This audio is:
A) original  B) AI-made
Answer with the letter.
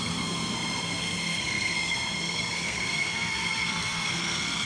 B